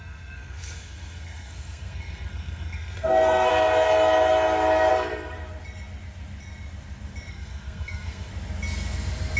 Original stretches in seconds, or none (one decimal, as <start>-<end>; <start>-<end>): 3.5-4.9; 5.4-7.3; 8.3-9.4